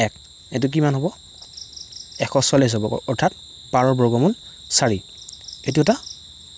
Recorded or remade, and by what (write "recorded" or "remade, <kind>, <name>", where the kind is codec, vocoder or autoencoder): recorded